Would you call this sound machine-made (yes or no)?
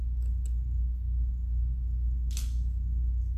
no